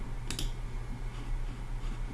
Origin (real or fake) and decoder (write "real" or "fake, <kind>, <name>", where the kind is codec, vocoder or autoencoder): real